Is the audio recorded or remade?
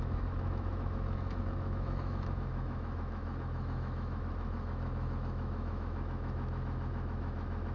remade